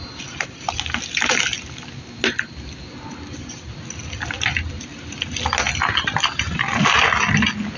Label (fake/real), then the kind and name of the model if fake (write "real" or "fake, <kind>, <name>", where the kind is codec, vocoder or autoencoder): real